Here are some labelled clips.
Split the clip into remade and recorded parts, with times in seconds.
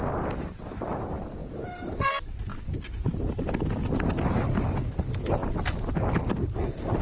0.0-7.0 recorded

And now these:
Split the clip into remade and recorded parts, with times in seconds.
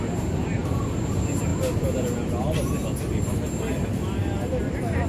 0.0-5.1 recorded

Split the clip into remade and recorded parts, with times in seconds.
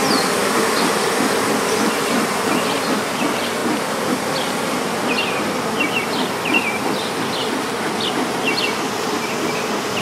0.0-0.4 recorded; 0.4-2.3 remade; 2.3-3.6 recorded; 3.6-4.8 remade; 4.8-10.0 recorded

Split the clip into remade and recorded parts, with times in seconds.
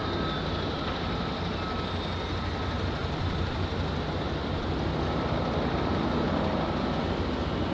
0.0-3.0 recorded; 3.0-7.7 remade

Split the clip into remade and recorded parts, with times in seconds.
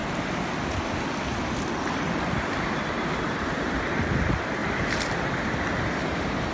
0.0-4.6 recorded; 4.6-6.5 remade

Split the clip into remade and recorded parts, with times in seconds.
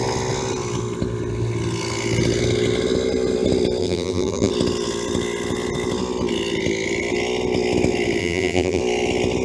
0.0-3.8 recorded; 3.8-4.5 remade; 4.5-8.2 recorded; 8.2-8.8 remade; 8.8-9.4 recorded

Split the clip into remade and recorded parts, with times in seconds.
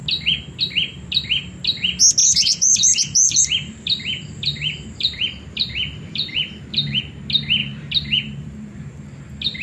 0.0-2.2 recorded; 2.2-7.0 remade; 7.0-7.6 recorded; 7.6-9.2 remade; 9.2-9.6 recorded